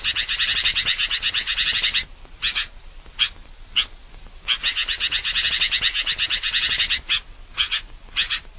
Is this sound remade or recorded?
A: recorded